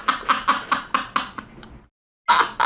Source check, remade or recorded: recorded